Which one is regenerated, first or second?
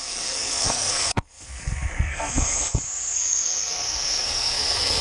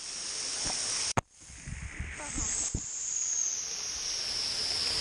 first